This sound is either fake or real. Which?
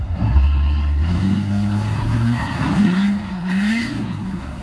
fake